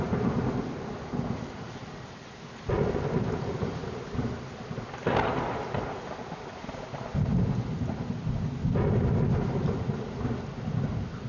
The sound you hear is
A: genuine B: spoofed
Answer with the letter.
A